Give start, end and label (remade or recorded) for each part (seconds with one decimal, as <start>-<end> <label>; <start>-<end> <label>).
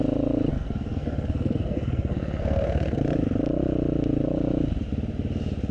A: 0.0-0.5 recorded; 0.5-3.0 remade; 3.0-5.7 recorded